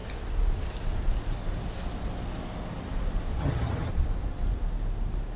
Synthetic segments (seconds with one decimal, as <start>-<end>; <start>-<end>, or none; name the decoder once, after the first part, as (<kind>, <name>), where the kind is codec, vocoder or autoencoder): 3.4-3.9 (vocoder, HiFi-GAN)